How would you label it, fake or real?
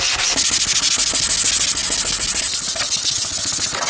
real